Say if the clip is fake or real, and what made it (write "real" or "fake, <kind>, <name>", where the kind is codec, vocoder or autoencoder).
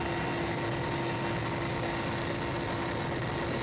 real